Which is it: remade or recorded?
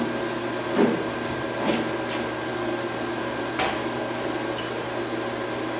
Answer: recorded